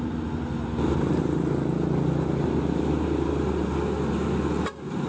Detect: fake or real real